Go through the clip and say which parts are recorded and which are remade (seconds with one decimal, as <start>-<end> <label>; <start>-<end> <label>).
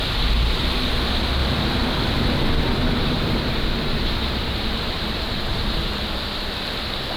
0.0-1.4 recorded; 1.4-5.7 remade; 5.7-7.2 recorded